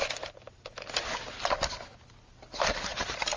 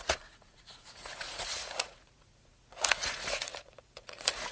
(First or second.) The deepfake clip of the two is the second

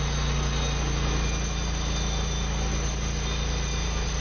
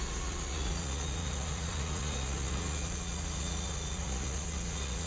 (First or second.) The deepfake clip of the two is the second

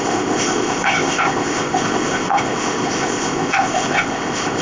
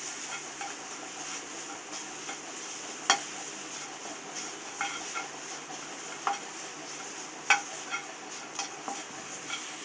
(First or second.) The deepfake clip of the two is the first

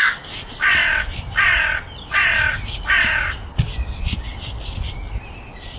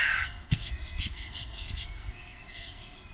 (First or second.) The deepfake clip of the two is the second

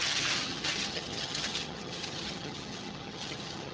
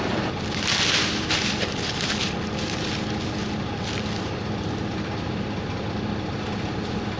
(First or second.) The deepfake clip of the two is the first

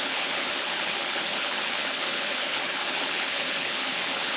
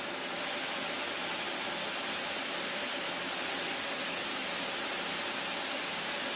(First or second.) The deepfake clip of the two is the first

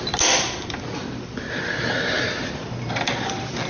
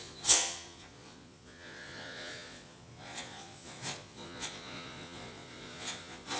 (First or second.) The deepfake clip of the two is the second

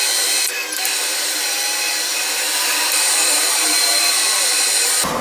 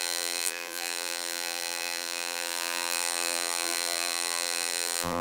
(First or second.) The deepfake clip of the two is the second